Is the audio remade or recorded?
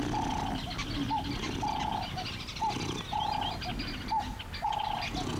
recorded